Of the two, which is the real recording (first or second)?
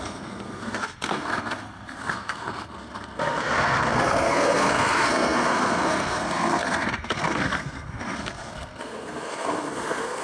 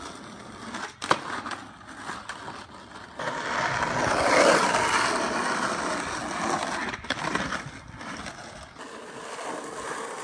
second